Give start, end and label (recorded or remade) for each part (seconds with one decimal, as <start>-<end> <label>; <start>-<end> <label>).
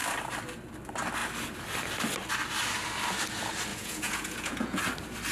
0.0-3.7 recorded; 3.7-4.8 remade; 4.8-5.3 recorded